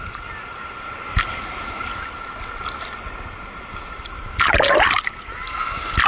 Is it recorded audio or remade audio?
recorded